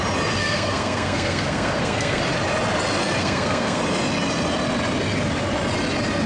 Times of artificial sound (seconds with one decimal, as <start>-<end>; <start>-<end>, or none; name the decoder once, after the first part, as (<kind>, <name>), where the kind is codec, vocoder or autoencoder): 0.4-2.2 (codec, SNAC); 3.2-3.8